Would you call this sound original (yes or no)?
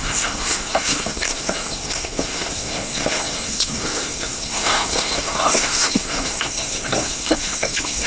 no